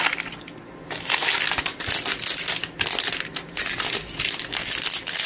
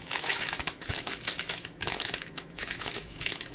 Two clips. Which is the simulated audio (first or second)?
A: second